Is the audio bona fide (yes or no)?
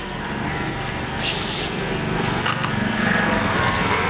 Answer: no